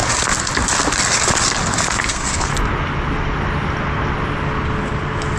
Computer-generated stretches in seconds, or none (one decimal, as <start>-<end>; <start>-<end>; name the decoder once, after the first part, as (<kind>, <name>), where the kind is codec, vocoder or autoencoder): 2.1-2.5 (codec, SNAC)